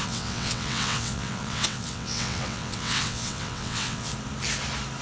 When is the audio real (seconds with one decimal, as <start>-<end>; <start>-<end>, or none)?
4.1-5.0